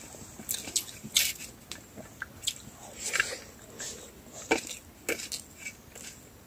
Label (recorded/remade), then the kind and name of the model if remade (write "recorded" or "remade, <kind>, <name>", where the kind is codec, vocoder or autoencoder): recorded